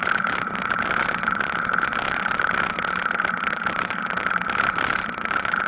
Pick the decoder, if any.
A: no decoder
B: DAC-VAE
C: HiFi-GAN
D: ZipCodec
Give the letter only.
A